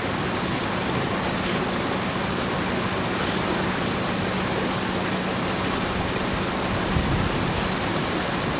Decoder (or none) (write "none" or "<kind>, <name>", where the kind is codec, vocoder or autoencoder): none